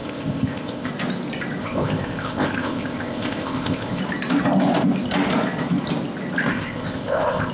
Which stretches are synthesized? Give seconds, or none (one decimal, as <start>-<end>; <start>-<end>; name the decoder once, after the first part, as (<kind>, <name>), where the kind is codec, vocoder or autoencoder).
0.0-0.9 (codec, ZipCodec); 1.6-4.0; 6.5-7.5